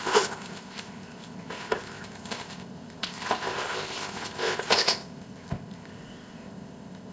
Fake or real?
fake